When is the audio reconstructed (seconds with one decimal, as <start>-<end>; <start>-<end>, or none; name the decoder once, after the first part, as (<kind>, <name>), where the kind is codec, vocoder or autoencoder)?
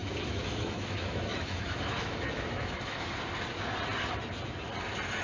0.0-3.1 (autoencoder, DAC-VAE)